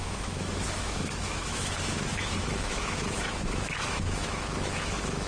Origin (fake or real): fake